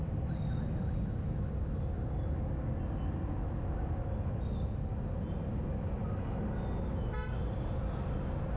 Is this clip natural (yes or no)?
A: yes